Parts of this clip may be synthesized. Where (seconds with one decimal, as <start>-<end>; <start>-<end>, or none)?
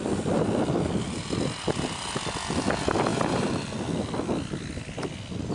3.1-3.8